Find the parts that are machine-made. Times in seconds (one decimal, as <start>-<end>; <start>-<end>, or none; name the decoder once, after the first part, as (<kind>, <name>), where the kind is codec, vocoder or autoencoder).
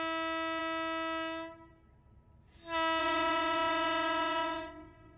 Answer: 3.0-5.2 (vocoder, Vocos)